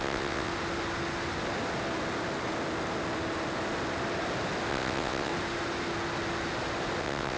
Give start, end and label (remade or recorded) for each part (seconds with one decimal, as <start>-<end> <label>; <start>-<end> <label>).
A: 0.0-0.5 remade; 0.5-4.7 recorded; 4.7-5.3 remade; 5.3-7.0 recorded; 7.0-7.4 remade